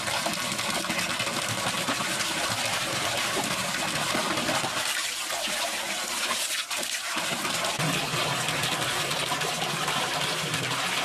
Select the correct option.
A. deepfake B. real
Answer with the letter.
A